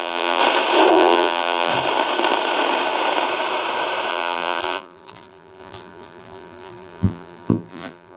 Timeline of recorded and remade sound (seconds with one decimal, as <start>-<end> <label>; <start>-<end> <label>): 0.0-0.4 remade; 0.4-0.9 recorded; 0.9-1.7 remade; 1.7-4.1 recorded; 4.1-8.2 remade